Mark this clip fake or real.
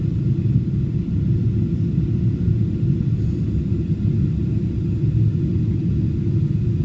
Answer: real